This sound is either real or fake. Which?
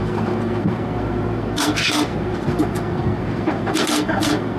fake